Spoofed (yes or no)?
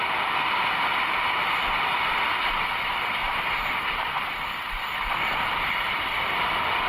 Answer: yes